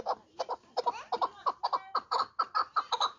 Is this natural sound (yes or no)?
yes